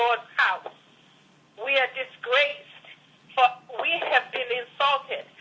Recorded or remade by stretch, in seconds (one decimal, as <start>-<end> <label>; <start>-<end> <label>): 0.0-5.4 recorded